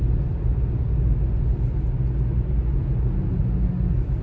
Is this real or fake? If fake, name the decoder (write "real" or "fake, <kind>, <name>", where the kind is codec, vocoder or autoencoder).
real